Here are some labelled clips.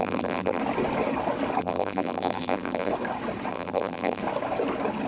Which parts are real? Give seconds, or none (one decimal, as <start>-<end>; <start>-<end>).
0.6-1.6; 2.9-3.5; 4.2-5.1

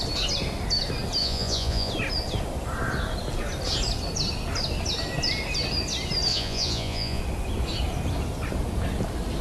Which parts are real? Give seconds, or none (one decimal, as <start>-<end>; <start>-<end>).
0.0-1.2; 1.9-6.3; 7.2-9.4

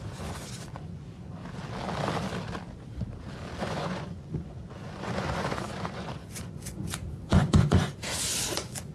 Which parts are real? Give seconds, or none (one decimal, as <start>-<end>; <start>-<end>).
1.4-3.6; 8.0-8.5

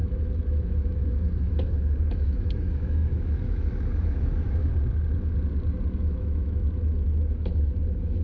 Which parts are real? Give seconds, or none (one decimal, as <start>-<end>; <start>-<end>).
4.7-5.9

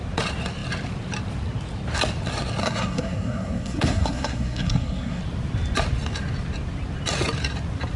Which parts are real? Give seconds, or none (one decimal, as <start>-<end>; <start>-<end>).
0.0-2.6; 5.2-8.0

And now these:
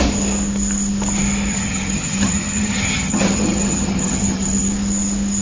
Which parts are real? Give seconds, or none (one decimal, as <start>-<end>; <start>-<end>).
0.0-1.5; 4.7-5.4